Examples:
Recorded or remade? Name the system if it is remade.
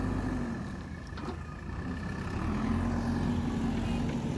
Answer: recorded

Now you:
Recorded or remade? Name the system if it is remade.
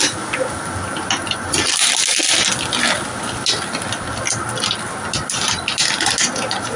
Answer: recorded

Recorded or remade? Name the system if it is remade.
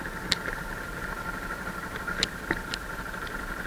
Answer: recorded